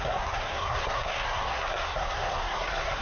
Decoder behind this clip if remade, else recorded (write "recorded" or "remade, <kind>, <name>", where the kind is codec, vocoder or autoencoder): remade, codec, SNAC